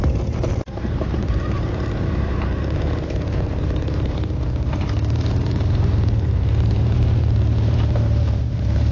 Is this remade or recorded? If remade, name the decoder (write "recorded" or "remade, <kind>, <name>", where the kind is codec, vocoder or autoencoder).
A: remade, vocoder, BigVGAN v2